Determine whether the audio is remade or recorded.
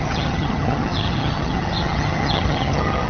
remade